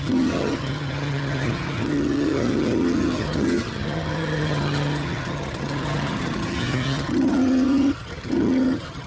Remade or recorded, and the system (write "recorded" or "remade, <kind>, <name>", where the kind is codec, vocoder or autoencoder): remade, vocoder, HiFi-GAN